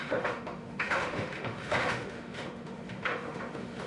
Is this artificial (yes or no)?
yes